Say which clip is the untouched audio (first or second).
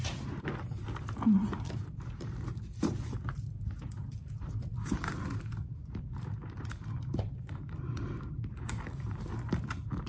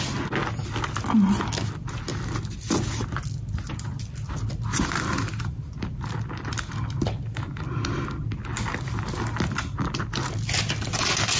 second